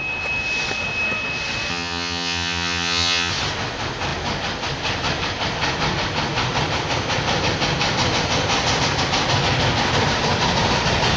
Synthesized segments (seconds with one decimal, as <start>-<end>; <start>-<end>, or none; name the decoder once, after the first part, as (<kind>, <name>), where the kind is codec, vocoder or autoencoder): 1.7-3.3 (vocoder, HiFi-GAN)